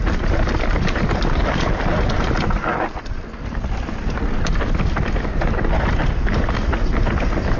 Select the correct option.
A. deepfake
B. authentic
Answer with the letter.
B